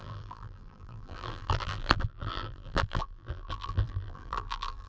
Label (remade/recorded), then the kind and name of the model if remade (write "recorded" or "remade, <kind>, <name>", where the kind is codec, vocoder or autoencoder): remade, vocoder, BigVGAN v2